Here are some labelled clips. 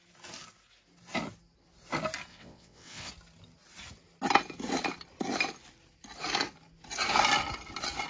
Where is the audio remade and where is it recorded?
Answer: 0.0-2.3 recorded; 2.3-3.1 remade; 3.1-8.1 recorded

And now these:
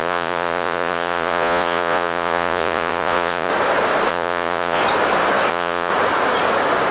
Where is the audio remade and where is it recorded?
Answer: 0.0-3.5 remade; 3.5-4.1 recorded; 4.1-4.8 remade; 4.8-5.5 recorded; 5.5-5.9 remade; 5.9-6.9 recorded

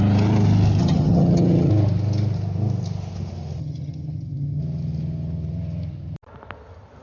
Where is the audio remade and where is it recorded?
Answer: 0.0-0.8 recorded; 0.8-1.7 remade; 1.7-3.6 recorded; 3.6-4.6 remade; 4.6-7.0 recorded

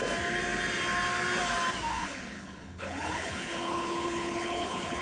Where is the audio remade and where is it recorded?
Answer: 0.0-1.9 recorded; 1.9-5.0 remade

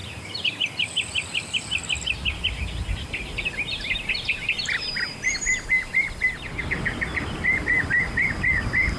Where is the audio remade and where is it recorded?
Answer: 0.0-0.5 remade; 0.5-9.0 recorded

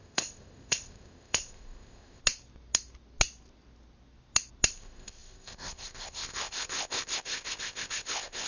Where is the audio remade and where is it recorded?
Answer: 0.0-2.2 remade; 2.2-4.7 recorded; 4.7-8.5 remade